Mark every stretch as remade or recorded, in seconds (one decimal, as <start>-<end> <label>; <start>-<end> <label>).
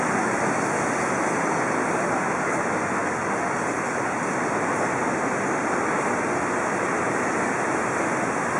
0.0-8.6 recorded